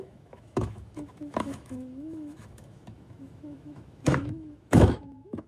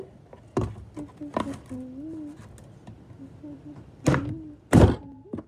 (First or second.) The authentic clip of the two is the second